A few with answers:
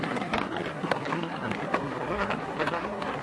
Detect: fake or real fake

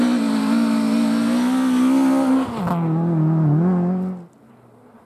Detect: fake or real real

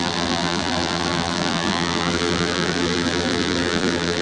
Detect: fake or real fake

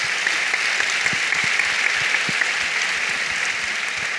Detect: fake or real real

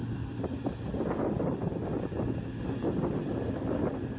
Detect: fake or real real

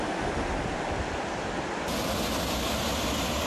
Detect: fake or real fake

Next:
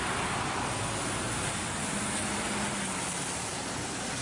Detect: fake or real real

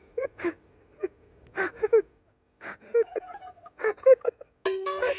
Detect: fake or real real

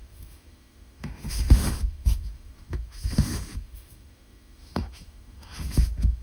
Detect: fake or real fake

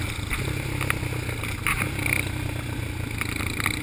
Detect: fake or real real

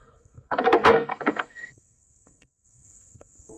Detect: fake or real fake